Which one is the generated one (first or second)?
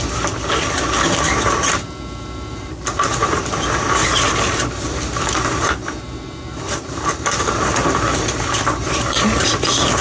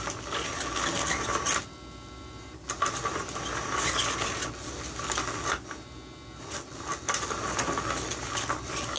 first